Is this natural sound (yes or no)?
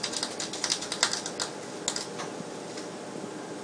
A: yes